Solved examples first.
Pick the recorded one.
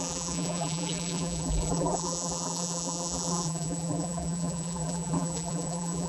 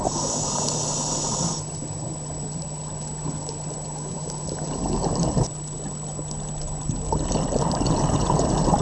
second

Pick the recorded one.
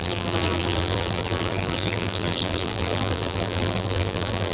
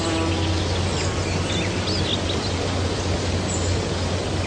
second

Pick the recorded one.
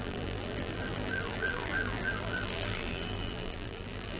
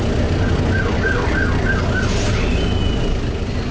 second